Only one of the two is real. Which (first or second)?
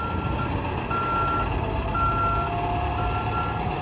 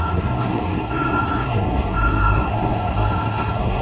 first